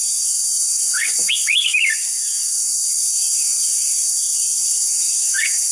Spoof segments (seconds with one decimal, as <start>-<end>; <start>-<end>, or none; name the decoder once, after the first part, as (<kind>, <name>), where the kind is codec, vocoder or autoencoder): 0.0-5.7 (autoencoder, DAC-VAE)